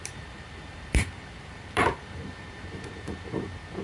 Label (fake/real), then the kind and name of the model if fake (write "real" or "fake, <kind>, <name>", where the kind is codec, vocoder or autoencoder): fake, vocoder, BigVGAN v2